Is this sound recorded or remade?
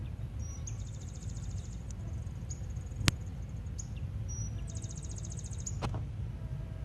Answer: recorded